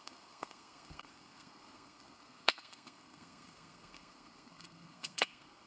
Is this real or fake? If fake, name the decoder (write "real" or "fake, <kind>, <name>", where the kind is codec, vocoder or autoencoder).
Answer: fake, codec, SNAC